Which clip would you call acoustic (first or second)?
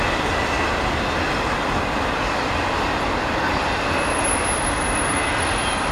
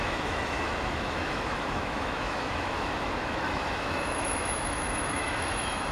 first